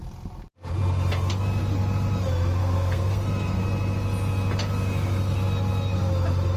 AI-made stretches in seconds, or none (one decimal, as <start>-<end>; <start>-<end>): 2.6-3.6